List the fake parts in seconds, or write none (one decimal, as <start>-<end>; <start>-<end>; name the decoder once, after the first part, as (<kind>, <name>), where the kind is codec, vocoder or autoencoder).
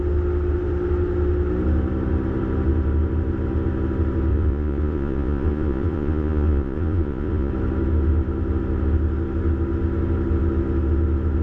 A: 4.3-7.5 (vocoder, Vocos)